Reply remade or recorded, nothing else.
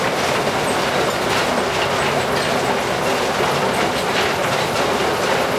recorded